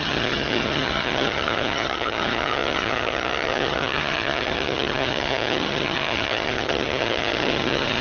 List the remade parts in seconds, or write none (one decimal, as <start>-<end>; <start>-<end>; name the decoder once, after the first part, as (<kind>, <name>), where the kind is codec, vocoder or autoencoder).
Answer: 0.0-8.0 (vocoder, HiFi-GAN)